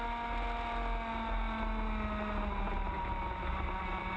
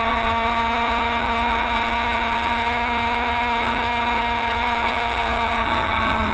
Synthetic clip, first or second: second